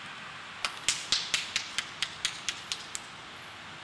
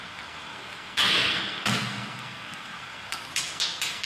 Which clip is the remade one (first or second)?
second